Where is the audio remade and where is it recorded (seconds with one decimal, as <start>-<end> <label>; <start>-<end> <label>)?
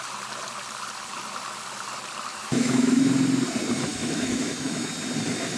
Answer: 0.0-2.3 recorded; 2.3-3.0 remade; 3.0-3.9 recorded; 3.9-4.9 remade; 4.9-5.6 recorded